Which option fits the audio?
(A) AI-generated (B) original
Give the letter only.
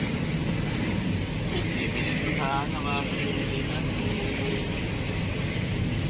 A